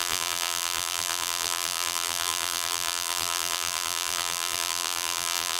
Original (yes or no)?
no